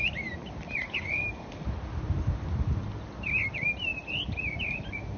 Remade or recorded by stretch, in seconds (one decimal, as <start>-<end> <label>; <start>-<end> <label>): 0.0-0.4 remade; 0.4-3.5 recorded; 3.5-3.9 remade; 3.9-4.6 recorded; 4.6-5.2 remade